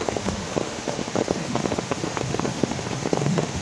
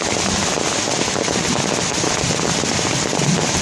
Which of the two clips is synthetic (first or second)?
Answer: first